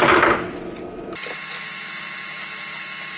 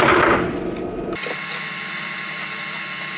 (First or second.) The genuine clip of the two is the first